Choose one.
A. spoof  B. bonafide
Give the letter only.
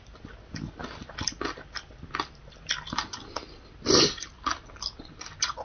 B